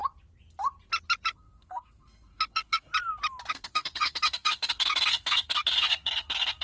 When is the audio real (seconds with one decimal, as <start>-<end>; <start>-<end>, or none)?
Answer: 0.0-1.3; 2.9-3.5